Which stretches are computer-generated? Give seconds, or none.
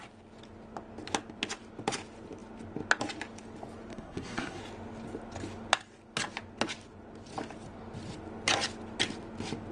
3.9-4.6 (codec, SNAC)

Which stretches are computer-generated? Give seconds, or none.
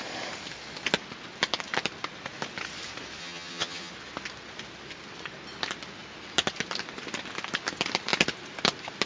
3.2-3.9 (vocoder, HiFi-GAN)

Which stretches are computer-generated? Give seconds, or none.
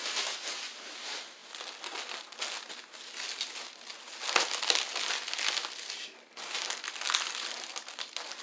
none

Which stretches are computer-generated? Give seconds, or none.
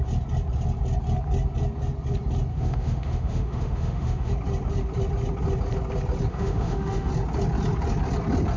2.5-4.3 (autoencoder, DAC-VAE); 6.3-7.1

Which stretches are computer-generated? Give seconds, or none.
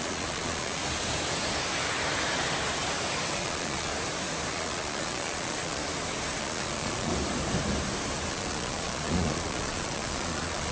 0.0-0.8 (vocoder, Vocos); 3.3-3.9; 4.5-5.8; 6.4-7.1; 8.3-10.7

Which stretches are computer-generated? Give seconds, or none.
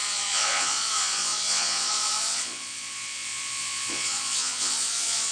0.0-5.3 (vocoder, Vocos)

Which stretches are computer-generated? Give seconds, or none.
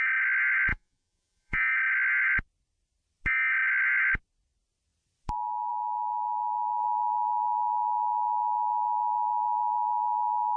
0.7-1.7 (vocoder, Vocos)